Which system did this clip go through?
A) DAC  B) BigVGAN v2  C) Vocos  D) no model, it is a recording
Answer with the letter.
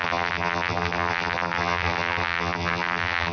B